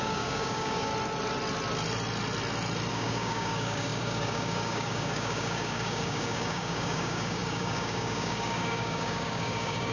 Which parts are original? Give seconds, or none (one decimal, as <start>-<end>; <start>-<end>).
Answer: 0.9-2.9